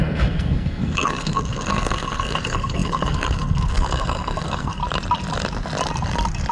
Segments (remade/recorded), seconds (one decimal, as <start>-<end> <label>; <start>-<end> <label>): 0.0-4.8 remade; 4.8-6.5 recorded